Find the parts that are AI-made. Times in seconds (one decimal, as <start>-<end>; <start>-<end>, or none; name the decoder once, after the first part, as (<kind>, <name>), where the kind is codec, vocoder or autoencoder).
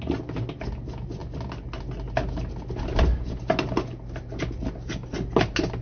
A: none